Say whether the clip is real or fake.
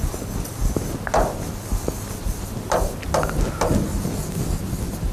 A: real